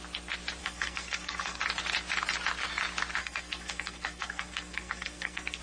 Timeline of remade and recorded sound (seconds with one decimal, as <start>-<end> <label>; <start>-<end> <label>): 0.0-0.6 recorded; 0.6-1.6 remade; 1.6-3.2 recorded; 3.2-5.6 remade

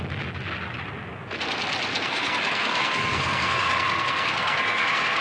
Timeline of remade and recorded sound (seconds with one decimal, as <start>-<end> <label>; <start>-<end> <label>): 0.0-1.9 recorded; 1.9-5.2 remade

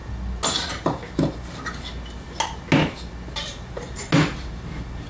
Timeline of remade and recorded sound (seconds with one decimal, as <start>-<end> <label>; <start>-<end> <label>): 0.0-5.1 recorded

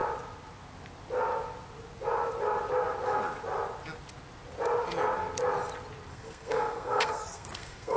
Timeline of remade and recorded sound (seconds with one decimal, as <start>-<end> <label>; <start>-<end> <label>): 0.0-6.1 recorded; 6.1-8.0 remade

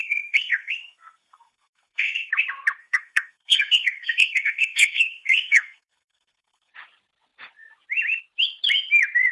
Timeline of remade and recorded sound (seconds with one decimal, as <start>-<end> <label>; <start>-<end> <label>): 0.0-2.3 remade; 2.3-2.8 recorded; 2.8-6.7 remade; 6.7-9.3 recorded